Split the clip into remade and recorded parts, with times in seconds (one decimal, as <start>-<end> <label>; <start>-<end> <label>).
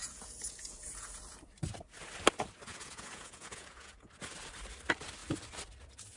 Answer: 0.0-1.2 remade; 1.2-2.7 recorded; 2.7-4.1 remade; 4.1-6.2 recorded